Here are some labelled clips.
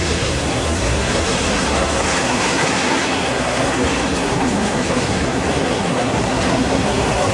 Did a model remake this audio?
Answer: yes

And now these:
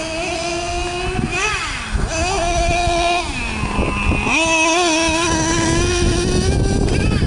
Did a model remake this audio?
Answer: no